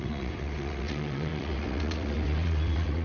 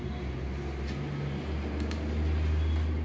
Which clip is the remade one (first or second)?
first